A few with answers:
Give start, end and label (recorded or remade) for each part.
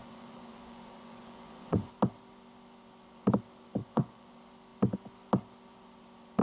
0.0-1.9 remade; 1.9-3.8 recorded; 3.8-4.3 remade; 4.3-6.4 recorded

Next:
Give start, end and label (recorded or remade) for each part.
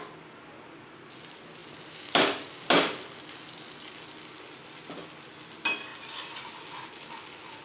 0.0-7.6 recorded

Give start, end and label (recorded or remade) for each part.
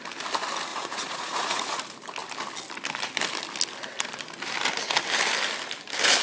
0.0-0.7 recorded; 0.7-1.8 remade; 1.8-6.2 recorded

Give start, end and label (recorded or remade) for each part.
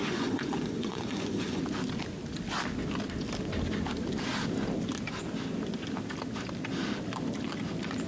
0.0-1.6 remade; 1.6-8.1 recorded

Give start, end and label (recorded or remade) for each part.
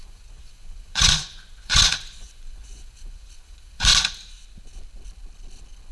0.0-3.9 remade; 3.9-5.9 recorded